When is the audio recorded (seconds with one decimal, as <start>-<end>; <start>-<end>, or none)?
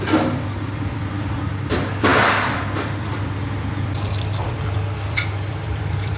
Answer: none